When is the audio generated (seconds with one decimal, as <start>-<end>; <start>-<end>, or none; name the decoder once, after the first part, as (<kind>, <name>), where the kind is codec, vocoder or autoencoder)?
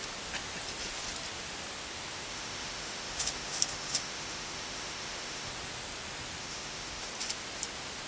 2.3-5.5 (autoencoder, DAC-VAE); 6.4-7.1